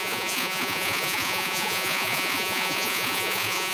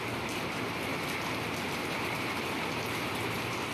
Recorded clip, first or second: second